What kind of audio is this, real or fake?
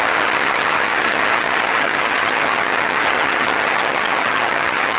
fake